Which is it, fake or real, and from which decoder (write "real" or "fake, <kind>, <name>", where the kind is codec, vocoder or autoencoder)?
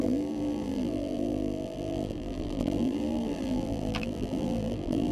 fake, vocoder, BigVGAN v2